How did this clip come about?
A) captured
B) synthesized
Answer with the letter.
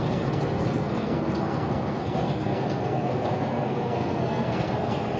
B